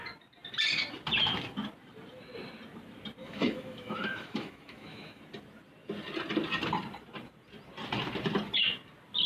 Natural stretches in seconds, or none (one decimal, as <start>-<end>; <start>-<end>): 0.0-3.2; 5.2-9.3